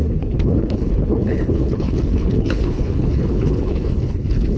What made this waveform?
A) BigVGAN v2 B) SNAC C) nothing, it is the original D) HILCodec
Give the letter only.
D